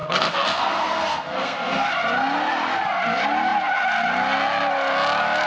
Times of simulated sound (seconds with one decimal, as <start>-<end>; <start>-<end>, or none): 0.0-1.9